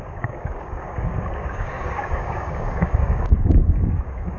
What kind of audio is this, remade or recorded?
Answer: remade